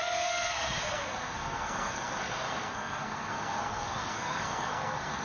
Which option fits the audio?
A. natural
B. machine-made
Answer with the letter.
B